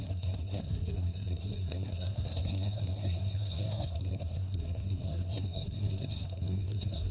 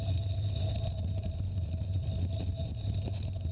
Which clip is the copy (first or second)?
first